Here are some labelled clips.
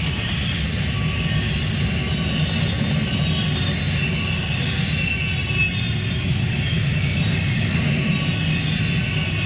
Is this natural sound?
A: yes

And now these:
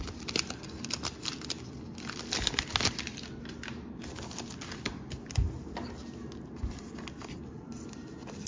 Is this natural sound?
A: yes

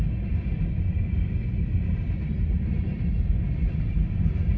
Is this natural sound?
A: no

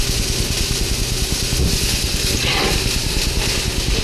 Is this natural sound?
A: yes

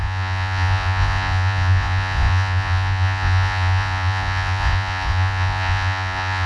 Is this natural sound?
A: no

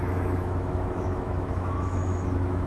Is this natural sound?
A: no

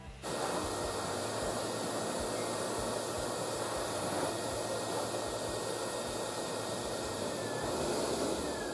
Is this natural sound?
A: yes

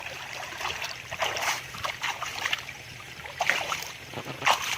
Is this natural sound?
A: no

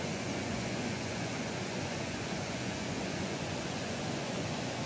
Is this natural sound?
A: no